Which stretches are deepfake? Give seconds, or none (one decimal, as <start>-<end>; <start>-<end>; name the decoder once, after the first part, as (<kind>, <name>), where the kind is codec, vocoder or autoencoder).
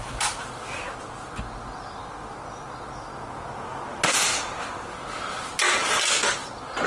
none